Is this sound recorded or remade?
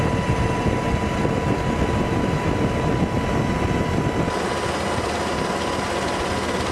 recorded